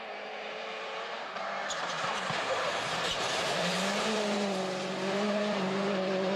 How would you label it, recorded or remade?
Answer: remade